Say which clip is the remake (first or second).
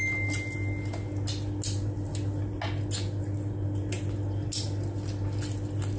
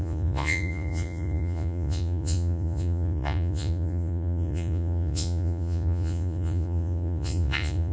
second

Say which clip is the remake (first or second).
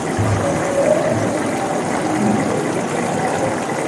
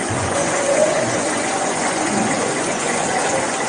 second